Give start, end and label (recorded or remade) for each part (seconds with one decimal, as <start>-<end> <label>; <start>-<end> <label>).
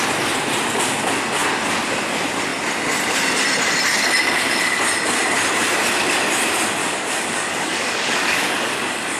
0.0-6.8 recorded; 6.8-9.2 remade